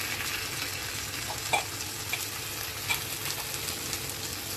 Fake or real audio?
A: real